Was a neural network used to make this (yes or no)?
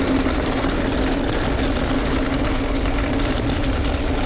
no